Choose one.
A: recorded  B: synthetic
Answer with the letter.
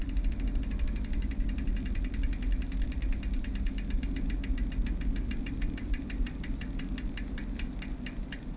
A